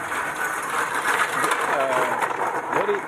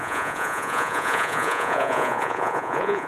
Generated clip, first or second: second